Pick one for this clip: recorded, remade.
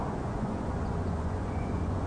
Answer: remade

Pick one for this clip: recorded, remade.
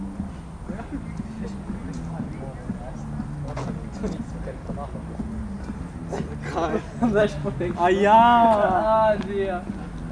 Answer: recorded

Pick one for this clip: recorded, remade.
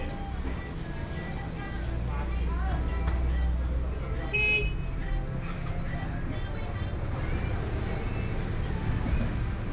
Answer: recorded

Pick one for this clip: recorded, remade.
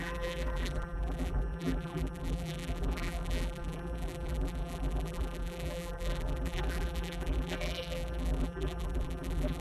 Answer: remade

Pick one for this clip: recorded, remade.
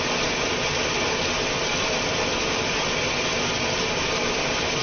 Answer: recorded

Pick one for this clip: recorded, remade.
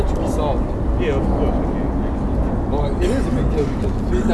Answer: recorded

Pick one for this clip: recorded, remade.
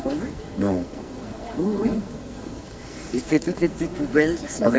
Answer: remade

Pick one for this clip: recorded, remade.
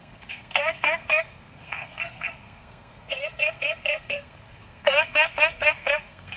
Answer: remade